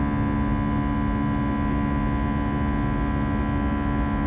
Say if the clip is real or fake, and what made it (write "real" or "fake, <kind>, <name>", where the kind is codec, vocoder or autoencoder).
real